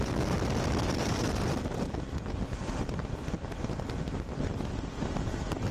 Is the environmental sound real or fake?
real